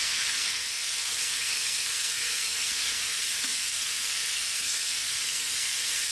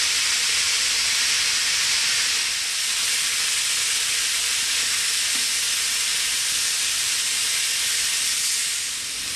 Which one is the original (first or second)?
second